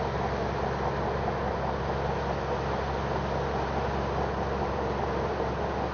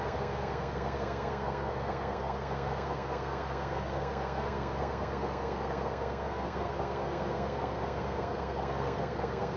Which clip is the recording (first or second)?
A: first